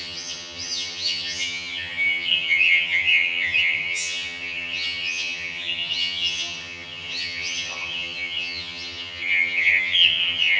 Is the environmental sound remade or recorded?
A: remade